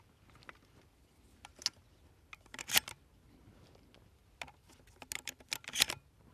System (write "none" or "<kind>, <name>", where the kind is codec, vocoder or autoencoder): none